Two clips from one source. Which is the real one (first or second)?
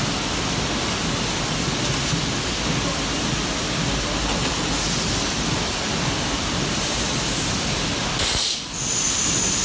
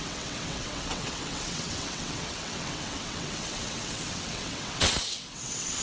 first